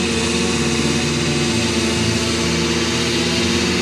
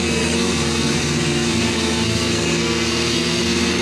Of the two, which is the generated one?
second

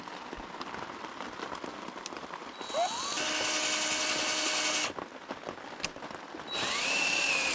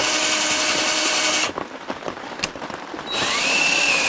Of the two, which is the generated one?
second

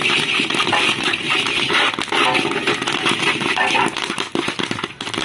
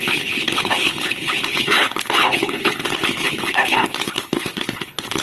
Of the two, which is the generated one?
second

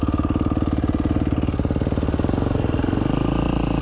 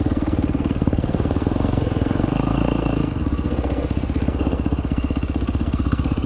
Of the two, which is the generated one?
second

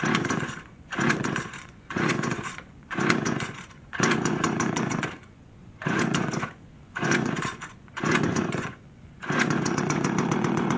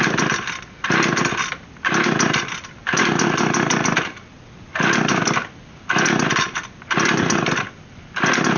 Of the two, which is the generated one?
first